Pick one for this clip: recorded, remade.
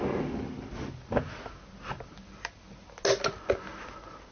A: recorded